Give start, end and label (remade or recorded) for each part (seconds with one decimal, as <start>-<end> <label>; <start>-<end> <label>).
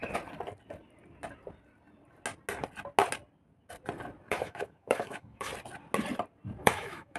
0.0-4.3 recorded; 4.3-5.5 remade; 5.5-6.6 recorded; 6.6-7.2 remade